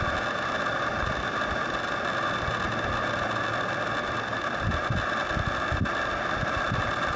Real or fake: real